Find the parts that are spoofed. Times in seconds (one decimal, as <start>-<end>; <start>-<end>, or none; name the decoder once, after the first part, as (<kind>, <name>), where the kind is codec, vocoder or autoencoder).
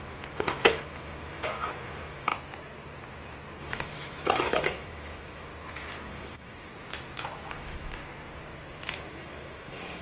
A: 0.0-2.3 (autoencoder, DAC-VAE); 3.6-5.5; 6.1-6.7; 7.5-8.0; 9.1-10.0